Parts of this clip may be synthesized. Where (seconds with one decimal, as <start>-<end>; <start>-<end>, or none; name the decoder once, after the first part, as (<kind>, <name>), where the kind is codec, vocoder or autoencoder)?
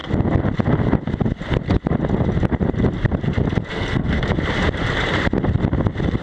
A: 3.7-4.2 (codec, SNAC)